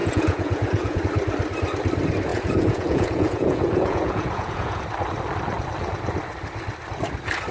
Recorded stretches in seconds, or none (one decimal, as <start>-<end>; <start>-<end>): 1.0-2.3; 4.8-7.5